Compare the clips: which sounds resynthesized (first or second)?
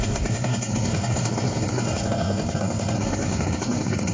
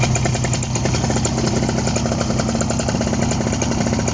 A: first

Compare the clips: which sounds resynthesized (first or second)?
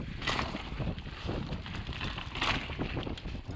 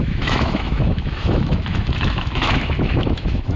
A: second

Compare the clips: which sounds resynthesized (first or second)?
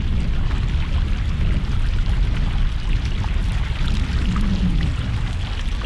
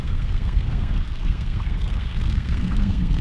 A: second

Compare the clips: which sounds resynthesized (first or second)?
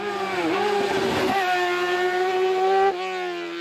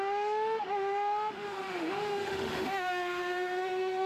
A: second